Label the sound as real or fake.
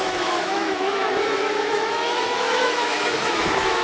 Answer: fake